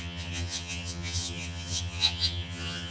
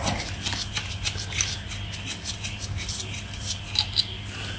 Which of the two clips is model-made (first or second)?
first